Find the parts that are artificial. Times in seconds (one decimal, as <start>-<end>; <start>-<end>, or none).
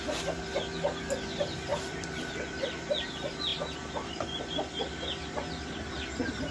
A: 1.7-2.7; 3.5-4.4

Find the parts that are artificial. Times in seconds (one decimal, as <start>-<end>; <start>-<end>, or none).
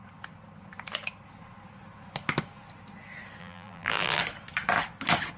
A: 3.4-4.2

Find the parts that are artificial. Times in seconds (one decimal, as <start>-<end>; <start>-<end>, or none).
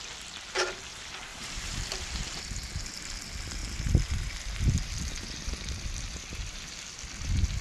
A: 1.3-2.5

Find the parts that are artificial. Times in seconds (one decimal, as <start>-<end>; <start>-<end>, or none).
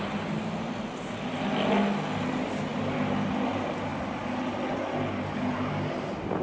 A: none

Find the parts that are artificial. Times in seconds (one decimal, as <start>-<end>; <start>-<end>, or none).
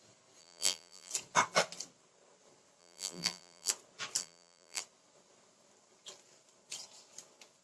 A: 0.4-1.1; 2.8-3.7; 4.2-4.8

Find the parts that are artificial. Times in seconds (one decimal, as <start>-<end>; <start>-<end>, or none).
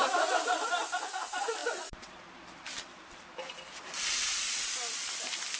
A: 0.0-5.6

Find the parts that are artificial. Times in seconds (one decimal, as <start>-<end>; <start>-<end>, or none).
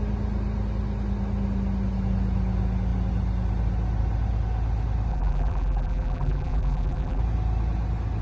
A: 5.1-7.2